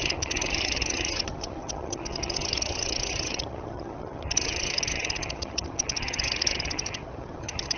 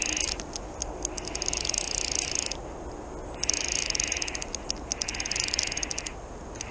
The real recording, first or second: second